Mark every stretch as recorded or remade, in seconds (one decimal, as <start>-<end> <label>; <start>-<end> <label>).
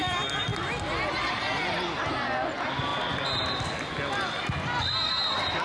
0.0-5.6 recorded